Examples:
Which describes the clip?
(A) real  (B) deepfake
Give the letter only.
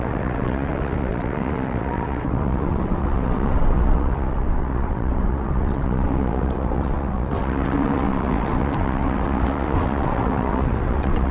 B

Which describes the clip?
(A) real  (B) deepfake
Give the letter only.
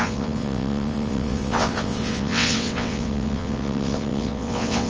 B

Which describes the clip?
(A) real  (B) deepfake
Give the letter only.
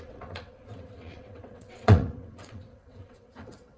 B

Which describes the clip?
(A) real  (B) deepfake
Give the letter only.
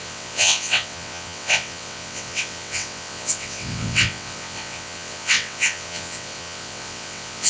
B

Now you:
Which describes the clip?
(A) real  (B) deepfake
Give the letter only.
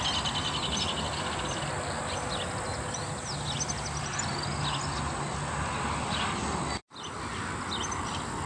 A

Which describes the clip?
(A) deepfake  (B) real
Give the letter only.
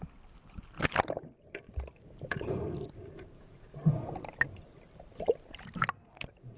B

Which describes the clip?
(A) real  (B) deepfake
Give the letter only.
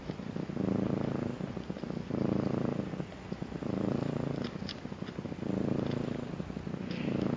A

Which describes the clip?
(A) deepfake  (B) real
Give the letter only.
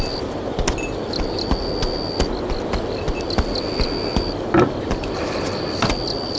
B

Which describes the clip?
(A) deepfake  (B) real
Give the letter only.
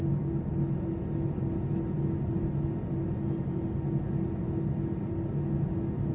B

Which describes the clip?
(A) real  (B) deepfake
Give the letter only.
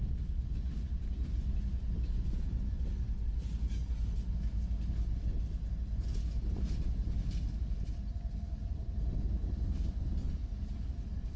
A